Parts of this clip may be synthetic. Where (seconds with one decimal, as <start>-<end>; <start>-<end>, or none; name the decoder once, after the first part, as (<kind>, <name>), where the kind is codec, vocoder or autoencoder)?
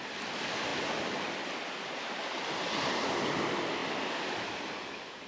none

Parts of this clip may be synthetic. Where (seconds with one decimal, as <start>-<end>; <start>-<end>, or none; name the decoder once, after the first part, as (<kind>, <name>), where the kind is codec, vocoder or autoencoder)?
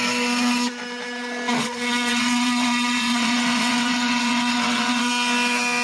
1.6-5.1 (vocoder, WaveNeXt)